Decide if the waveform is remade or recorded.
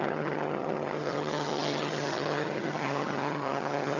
remade